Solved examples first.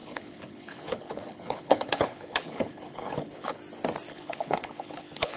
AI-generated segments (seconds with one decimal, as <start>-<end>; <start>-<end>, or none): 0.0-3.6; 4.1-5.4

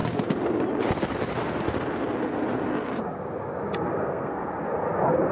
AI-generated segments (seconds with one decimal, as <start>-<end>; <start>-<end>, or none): 3.9-4.5

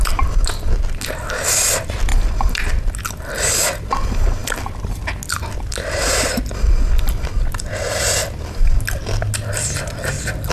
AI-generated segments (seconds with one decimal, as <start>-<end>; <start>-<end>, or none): none

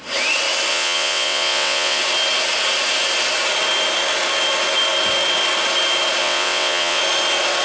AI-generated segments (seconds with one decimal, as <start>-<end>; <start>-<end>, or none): 0.7-2.0; 6.2-7.0

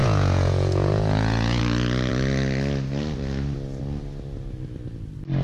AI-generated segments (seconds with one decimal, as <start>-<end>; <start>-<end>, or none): 0.0-1.6